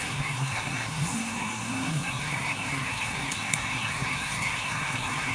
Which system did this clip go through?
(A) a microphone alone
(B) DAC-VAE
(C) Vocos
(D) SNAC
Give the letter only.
D